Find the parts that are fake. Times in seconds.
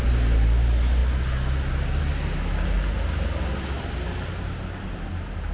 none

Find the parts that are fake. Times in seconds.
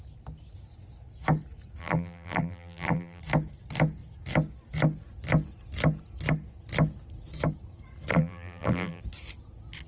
1.8-3.2 (vocoder, BigVGAN v2); 8.1-9.0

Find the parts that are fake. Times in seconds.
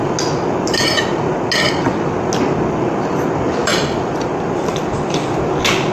3.6-4.4 (vocoder, BigVGAN v2)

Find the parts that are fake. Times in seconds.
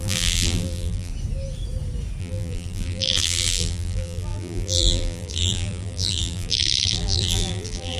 0.0-1.1 (vocoder, BigVGAN v2); 2.2-8.0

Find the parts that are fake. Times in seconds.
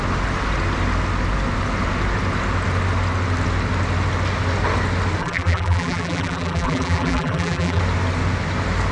5.2-7.8 (vocoder, BigVGAN v2)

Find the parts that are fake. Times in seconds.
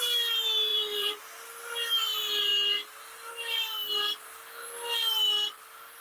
0.7-1.2 (vocoder, BigVGAN v2)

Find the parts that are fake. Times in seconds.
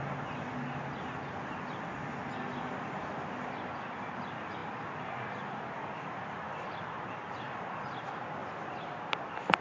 8.4-9.6 (vocoder, BigVGAN v2)